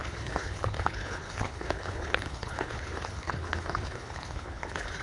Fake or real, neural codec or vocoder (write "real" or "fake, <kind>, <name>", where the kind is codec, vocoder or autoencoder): fake, codec, HILCodec